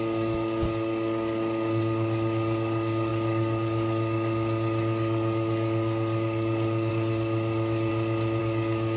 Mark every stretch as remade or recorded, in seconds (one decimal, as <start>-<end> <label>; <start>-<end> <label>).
0.0-7.9 remade; 7.9-8.4 recorded; 8.4-9.0 remade